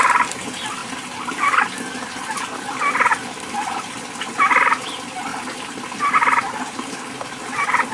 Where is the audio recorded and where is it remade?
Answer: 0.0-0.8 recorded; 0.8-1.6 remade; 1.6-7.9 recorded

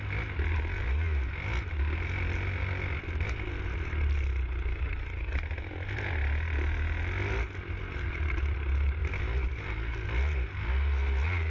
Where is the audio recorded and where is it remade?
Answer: 0.0-11.5 recorded